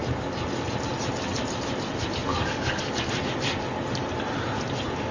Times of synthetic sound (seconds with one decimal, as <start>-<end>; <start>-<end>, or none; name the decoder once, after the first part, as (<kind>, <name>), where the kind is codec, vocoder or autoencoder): 2.3-3.1 (codec, DAC)